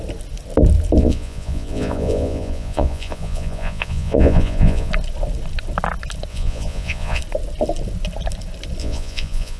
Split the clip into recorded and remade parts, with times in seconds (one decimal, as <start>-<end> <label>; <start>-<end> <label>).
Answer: 0.0-1.0 recorded; 1.0-4.9 remade; 4.9-6.3 recorded; 6.3-7.2 remade; 7.2-8.8 recorded; 8.8-9.6 remade